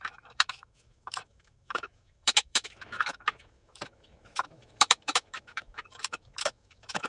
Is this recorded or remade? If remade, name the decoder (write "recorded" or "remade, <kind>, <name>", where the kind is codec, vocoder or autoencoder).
remade, autoencoder, DAC-VAE